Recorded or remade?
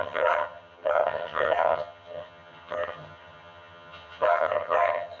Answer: remade